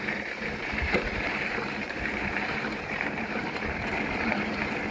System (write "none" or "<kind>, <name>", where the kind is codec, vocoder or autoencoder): vocoder, BigVGAN v2